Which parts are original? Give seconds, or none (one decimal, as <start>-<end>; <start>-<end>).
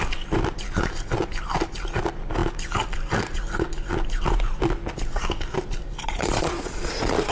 0.0-6.0